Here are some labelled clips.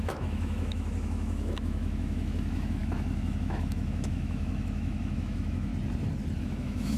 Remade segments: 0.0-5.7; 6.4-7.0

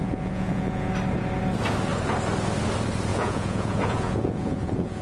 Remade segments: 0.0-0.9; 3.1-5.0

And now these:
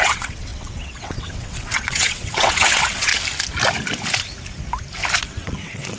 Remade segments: 0.0-3.1; 5.2-6.0

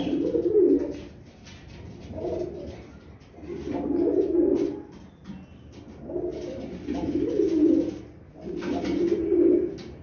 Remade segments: none

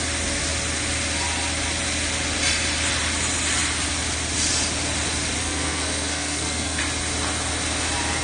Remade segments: 5.4-6.8

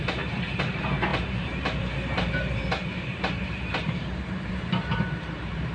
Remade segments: 0.0-5.7

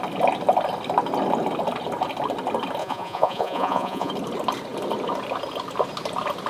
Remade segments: 2.8-4.1

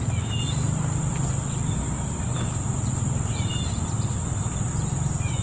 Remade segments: 1.1-4.3